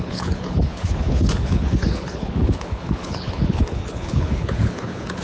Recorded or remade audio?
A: remade